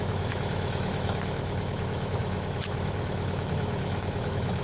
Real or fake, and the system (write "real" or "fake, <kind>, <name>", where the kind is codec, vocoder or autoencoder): fake, autoencoder, DAC-VAE